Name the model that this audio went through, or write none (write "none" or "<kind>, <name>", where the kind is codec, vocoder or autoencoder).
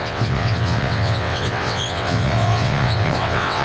vocoder, WaveNeXt